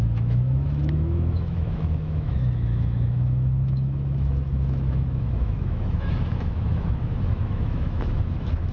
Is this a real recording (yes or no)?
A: no